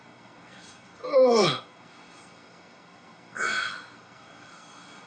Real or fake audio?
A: fake